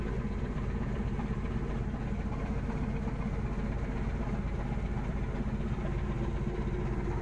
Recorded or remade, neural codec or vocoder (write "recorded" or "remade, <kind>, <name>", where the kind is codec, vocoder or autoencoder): recorded